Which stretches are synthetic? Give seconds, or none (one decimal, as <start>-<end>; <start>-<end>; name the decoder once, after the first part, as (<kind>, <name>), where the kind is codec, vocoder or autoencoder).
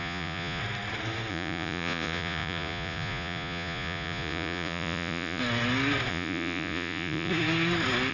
0.0-0.6 (vocoder, Vocos); 1.3-5.4; 6.1-7.3